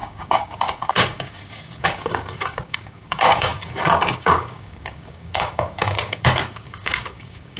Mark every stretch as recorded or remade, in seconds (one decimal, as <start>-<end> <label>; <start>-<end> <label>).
0.0-7.6 remade